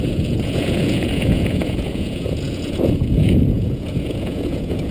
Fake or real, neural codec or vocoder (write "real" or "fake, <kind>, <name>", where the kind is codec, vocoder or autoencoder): fake, vocoder, Vocos